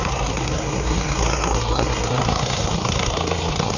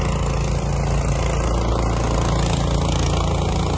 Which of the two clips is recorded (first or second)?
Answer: second